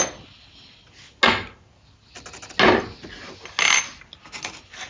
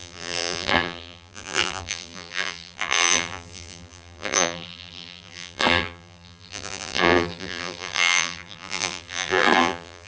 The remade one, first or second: second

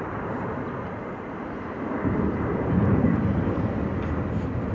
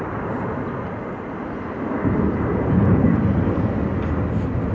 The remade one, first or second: first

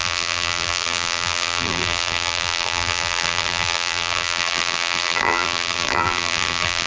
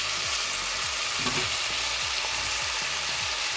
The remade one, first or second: first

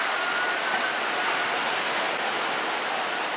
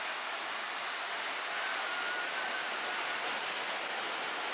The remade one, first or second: first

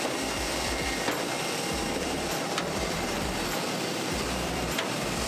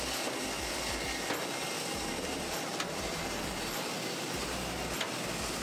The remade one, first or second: first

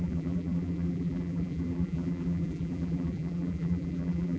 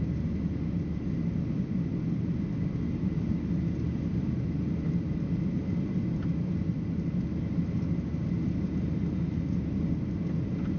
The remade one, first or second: first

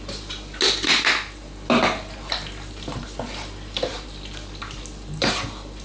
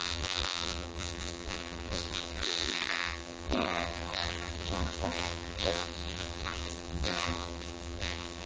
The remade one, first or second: second